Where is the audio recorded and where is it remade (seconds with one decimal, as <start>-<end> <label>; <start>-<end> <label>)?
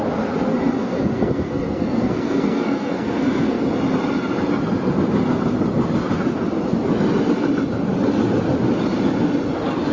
0.0-0.8 recorded; 0.8-3.6 remade; 3.6-9.9 recorded